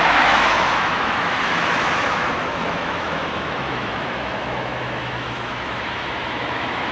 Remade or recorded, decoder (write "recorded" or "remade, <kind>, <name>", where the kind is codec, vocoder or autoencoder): remade, autoencoder, DAC-VAE